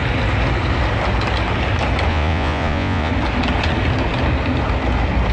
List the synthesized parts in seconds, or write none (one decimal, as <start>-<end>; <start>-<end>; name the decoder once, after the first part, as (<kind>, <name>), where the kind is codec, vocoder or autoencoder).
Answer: 2.1-3.1 (vocoder, Vocos)